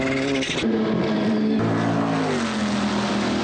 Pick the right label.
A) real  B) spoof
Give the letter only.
A